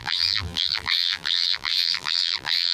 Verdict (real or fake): fake